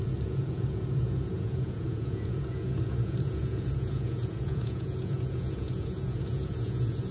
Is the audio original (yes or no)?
no